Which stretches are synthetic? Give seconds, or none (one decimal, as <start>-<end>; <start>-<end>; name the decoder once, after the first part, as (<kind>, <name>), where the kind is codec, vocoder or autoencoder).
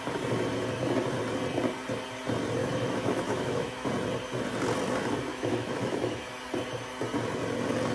2.6-3.9 (autoencoder, DAC-VAE); 5.3-6.2